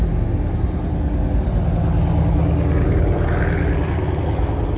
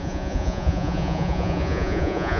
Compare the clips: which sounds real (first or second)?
first